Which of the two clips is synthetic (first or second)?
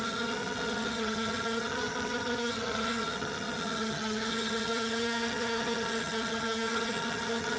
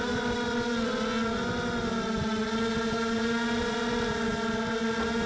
first